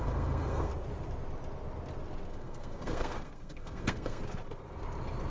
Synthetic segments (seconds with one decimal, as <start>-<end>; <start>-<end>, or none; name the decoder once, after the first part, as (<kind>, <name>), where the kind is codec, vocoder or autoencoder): 0.0-0.7 (codec, SNAC); 2.3-4.2